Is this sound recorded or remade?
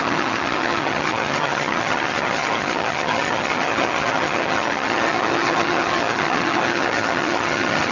remade